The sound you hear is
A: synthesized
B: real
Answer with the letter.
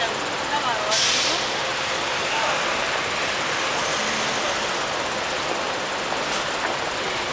B